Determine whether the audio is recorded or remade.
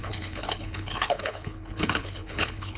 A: remade